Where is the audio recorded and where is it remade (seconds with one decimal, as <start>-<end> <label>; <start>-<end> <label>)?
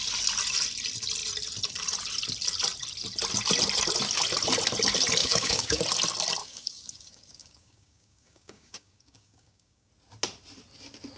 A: 0.0-5.2 recorded; 5.2-5.8 remade; 5.8-6.4 recorded; 6.4-9.9 remade; 9.9-11.2 recorded